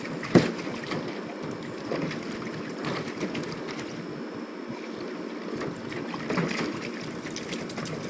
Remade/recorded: recorded